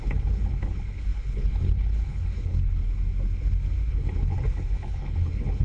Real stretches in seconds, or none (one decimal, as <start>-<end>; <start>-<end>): 2.8-3.9